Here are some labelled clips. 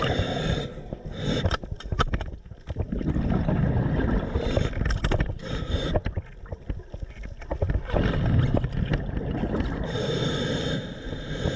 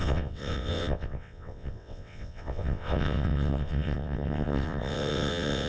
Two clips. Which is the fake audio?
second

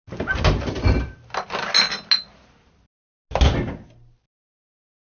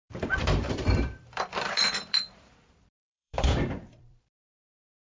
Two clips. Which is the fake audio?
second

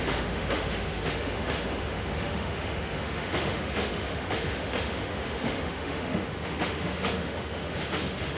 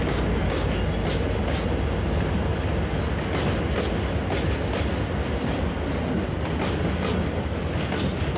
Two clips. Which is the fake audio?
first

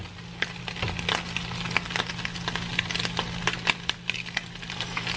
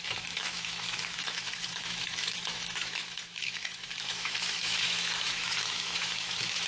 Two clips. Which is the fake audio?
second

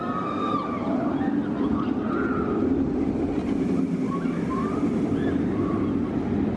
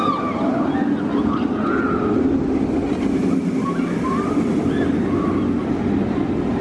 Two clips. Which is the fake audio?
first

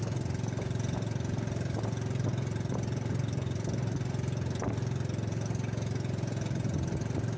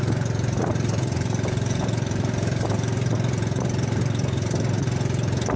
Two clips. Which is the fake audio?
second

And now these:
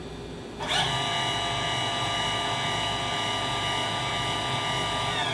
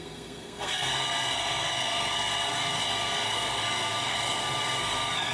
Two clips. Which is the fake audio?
second